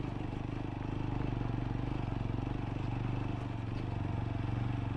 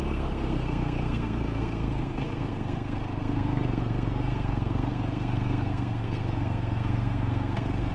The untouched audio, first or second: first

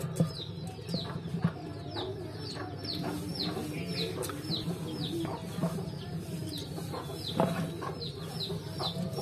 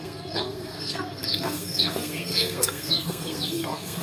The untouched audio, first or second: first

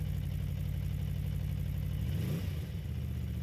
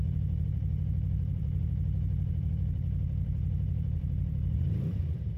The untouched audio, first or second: first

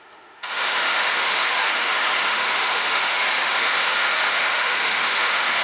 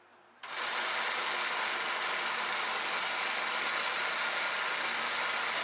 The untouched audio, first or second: second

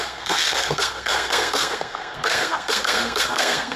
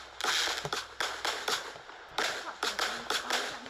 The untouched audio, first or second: second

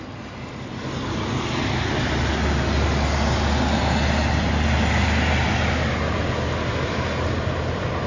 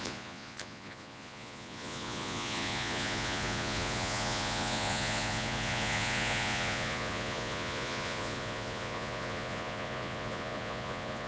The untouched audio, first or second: first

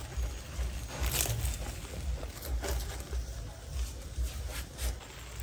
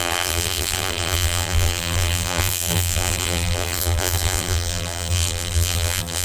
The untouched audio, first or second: first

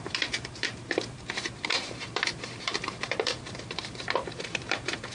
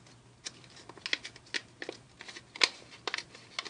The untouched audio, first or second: second